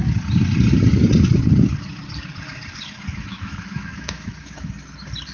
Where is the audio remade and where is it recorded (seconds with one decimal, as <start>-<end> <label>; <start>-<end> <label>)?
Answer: 0.0-3.3 recorded; 3.3-4.7 remade; 4.7-5.3 recorded